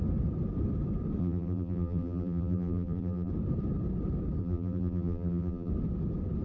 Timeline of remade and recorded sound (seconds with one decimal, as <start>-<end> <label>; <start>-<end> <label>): 0.0-1.2 recorded; 1.2-3.3 remade; 3.3-4.4 recorded; 4.4-5.7 remade; 5.7-6.4 recorded